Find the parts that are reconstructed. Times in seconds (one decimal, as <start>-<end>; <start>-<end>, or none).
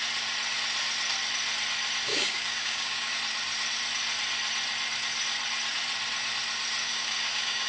2.1-3.1; 6.8-7.7